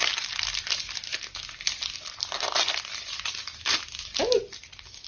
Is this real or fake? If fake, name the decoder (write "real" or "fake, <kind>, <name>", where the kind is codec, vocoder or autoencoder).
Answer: real